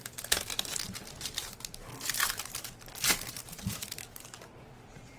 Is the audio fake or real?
fake